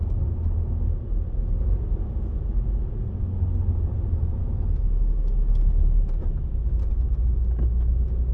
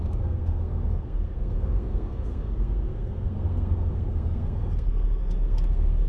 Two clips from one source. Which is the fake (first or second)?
second